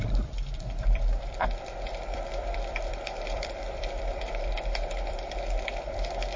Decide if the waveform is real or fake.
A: fake